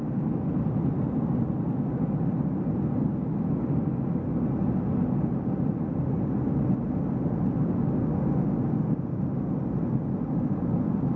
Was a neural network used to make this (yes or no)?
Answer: no